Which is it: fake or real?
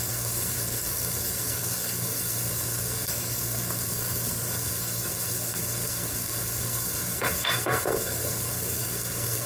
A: fake